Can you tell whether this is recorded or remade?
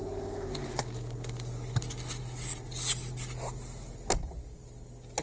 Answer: recorded